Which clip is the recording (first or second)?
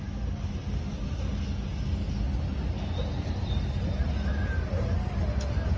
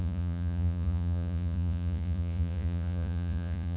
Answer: first